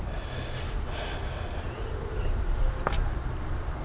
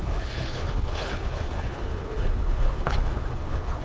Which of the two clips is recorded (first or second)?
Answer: first